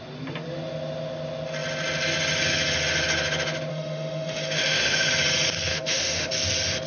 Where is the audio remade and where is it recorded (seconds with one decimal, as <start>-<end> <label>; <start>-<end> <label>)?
0.0-3.7 recorded; 3.7-5.1 remade; 5.1-5.7 recorded; 5.7-6.3 remade; 6.3-6.9 recorded